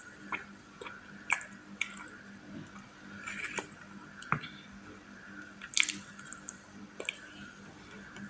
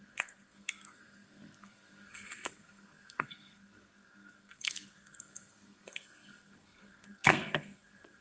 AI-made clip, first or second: second